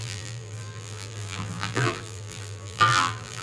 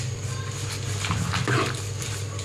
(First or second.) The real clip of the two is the second